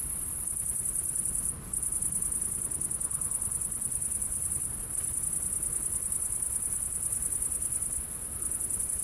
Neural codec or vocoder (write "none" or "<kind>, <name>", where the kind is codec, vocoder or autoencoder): vocoder, BigVGAN v2